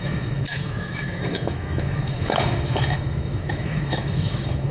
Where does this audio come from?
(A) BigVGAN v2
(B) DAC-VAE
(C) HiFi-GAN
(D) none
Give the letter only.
B